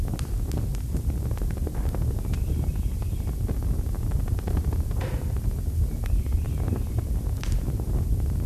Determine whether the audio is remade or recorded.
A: recorded